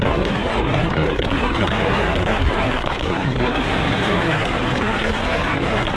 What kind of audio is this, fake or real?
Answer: fake